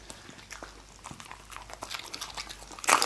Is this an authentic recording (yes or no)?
yes